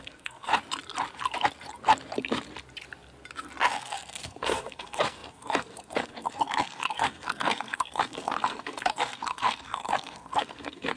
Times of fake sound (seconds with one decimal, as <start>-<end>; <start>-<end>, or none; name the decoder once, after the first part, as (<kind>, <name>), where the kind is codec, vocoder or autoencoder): 0.0-0.5 (codec, SNAC); 3.8-11.0